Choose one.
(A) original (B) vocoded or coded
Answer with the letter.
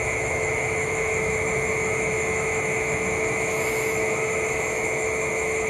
B